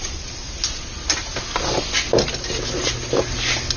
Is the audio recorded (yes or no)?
yes